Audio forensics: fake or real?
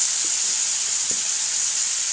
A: real